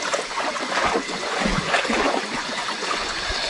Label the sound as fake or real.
fake